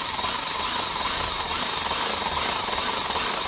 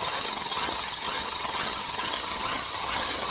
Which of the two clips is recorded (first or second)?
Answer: first